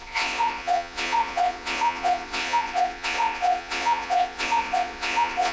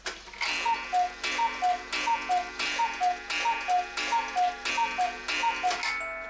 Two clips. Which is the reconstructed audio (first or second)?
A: first